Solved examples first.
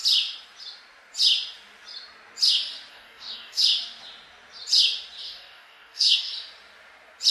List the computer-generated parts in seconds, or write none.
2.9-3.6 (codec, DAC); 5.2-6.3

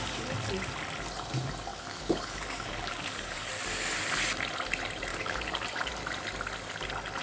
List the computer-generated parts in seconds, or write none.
1.7-3.5 (codec, DAC); 5.1-5.9

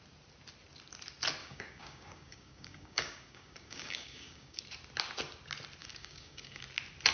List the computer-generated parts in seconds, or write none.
1.4-4.6 (codec, DAC); 5.8-6.6